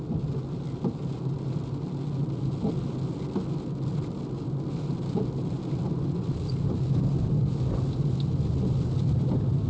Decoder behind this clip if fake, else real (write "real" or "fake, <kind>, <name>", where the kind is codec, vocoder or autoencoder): real